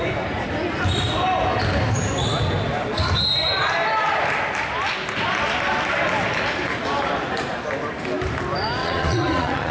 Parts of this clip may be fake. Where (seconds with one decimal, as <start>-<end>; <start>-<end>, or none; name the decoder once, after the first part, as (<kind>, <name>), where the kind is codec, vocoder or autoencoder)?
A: 8.8-9.7 (vocoder, Vocos)